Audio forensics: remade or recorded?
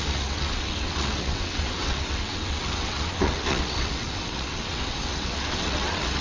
remade